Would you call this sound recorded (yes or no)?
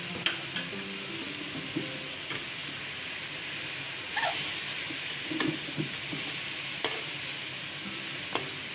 yes